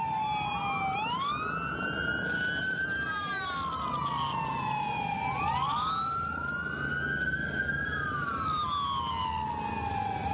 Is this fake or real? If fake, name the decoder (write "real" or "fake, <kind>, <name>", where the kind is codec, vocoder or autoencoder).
real